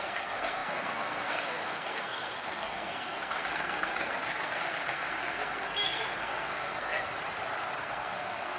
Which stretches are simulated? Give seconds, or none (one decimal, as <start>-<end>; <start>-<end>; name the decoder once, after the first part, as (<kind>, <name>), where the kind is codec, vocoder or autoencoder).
0.0-7.1 (codec, SNAC); 7.8-8.6

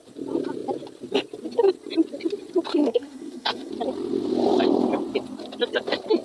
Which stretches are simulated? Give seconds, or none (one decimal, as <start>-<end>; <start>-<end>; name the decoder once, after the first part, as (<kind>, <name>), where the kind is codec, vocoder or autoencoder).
2.7-3.7 (codec, SNAC)